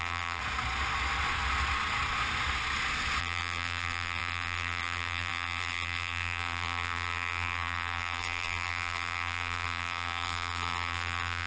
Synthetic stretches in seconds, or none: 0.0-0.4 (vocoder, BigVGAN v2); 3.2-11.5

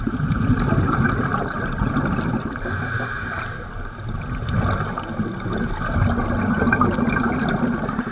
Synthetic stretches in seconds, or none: none